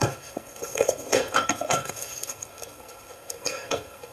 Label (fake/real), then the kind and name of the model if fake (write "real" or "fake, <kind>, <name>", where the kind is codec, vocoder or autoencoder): fake, codec, SNAC